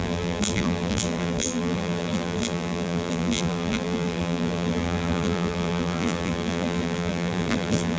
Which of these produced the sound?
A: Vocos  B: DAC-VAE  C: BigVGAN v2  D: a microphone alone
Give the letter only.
C